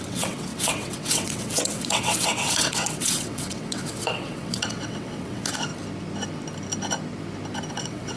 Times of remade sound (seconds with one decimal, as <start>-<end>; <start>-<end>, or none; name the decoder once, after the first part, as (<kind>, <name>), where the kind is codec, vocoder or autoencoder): 0.0-5.7 (vocoder, WaveNeXt); 7.7-8.2